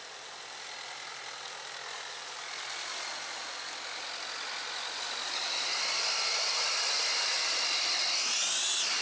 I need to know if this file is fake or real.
real